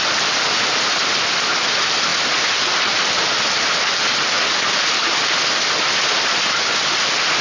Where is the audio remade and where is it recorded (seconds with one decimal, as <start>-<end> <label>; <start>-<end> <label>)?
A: 0.0-7.4 recorded